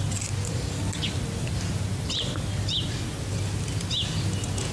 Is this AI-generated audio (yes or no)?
no